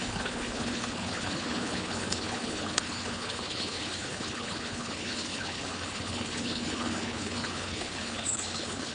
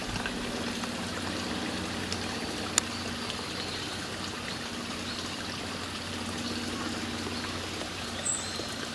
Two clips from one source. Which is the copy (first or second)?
first